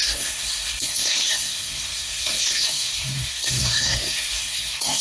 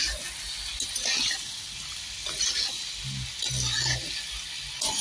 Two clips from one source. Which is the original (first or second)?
second